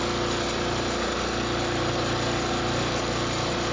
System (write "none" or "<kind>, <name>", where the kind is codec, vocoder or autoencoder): none